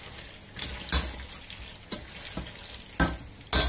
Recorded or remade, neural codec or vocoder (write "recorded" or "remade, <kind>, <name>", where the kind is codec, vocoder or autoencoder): recorded